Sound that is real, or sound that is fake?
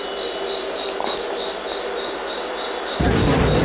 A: real